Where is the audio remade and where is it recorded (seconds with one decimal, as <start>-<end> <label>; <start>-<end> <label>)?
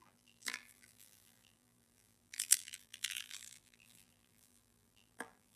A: 0.0-5.6 remade